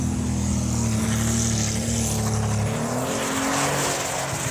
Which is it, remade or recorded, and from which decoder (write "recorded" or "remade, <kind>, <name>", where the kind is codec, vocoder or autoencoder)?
recorded